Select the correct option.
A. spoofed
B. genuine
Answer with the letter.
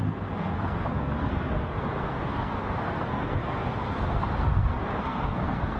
A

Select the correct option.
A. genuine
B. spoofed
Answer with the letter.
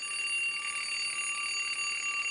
A